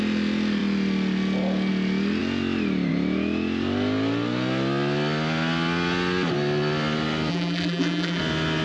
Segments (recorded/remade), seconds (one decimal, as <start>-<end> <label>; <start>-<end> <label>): 0.0-7.3 recorded; 7.3-8.2 remade; 8.2-8.6 recorded